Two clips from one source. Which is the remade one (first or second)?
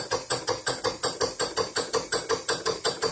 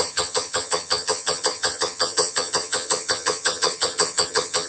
second